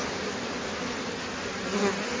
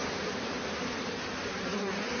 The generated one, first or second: second